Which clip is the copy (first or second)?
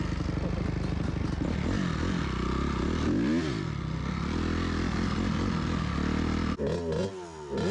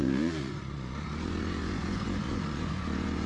second